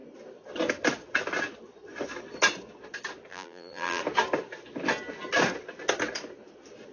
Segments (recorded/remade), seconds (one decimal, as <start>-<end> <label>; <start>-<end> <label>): 0.0-3.3 recorded; 3.3-4.0 remade; 4.0-6.9 recorded